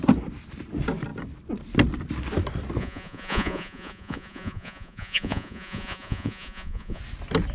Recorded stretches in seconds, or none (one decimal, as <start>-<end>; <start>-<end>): 0.0-2.8; 7.0-7.5